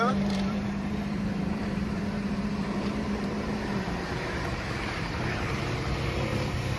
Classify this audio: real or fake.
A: fake